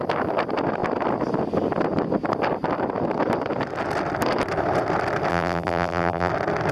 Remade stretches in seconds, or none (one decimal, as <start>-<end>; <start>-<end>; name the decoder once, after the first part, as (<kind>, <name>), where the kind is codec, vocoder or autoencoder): 5.3-6.3 (vocoder, BigVGAN v2)